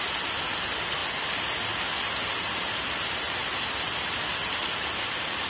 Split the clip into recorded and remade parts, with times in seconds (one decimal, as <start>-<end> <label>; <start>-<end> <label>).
0.0-1.0 remade; 1.0-3.0 recorded; 3.0-5.5 remade